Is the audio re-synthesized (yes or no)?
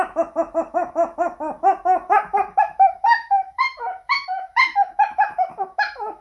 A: yes